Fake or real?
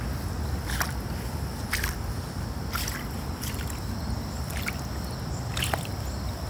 real